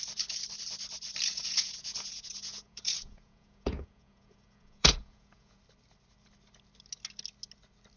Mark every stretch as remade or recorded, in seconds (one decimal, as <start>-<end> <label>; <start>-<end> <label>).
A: 0.0-1.3 recorded; 1.3-5.6 remade; 5.6-8.0 recorded